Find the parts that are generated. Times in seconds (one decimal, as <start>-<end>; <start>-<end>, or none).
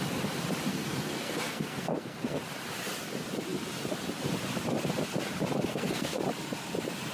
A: 0.7-2.4; 5.7-6.2